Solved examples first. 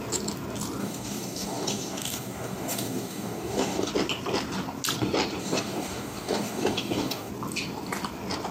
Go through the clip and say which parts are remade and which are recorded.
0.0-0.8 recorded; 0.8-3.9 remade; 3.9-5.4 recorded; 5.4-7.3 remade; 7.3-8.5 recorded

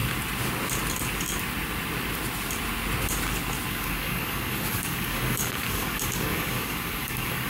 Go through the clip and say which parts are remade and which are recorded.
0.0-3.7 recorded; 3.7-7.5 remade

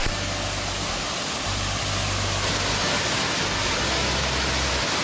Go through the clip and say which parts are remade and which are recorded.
0.0-5.0 recorded

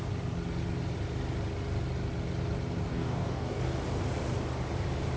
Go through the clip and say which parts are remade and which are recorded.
0.0-2.9 recorded; 2.9-3.6 remade; 3.6-5.2 recorded

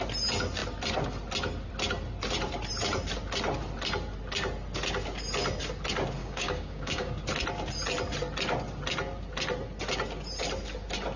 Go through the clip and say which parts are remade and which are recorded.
0.0-6.2 recorded; 6.2-7.1 remade; 7.1-11.2 recorded

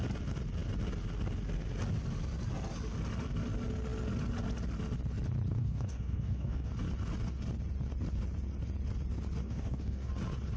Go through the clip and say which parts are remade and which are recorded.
0.0-5.5 recorded; 5.5-6.7 remade; 6.7-9.4 recorded; 9.4-10.1 remade; 10.1-10.6 recorded